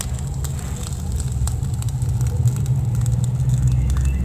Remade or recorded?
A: recorded